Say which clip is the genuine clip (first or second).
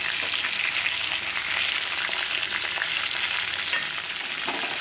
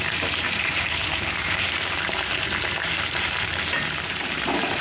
first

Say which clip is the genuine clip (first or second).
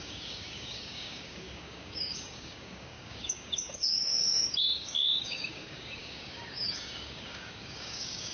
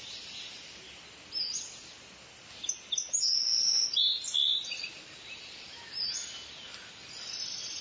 second